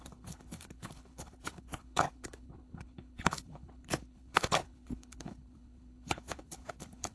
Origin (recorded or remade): remade